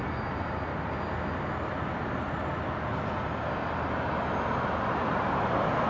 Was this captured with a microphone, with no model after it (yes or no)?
yes